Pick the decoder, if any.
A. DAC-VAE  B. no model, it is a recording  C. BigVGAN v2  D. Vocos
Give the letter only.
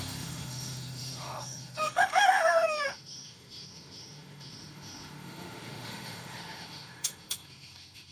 A